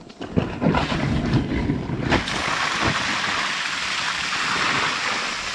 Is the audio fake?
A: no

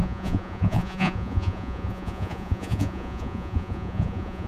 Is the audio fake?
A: yes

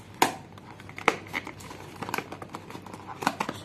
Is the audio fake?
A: no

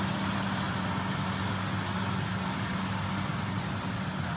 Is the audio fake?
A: no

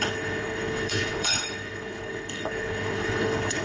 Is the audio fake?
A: yes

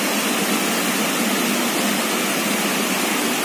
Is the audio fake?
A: no